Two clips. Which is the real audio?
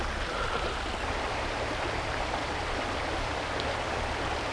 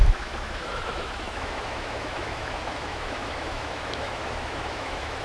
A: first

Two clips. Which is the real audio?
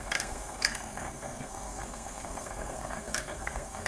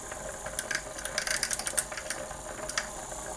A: second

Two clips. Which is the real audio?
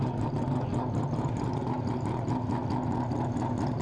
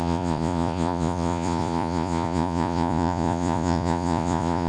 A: first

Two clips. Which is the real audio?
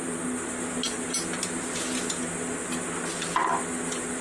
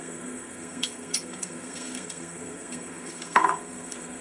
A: first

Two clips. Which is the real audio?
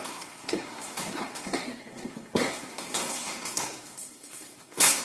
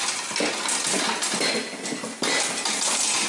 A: second